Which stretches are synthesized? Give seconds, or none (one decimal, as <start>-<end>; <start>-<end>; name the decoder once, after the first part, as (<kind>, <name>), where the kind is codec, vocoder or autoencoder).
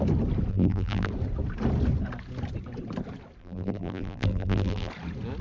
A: 0.5-1.1 (vocoder, BigVGAN v2); 3.4-4.9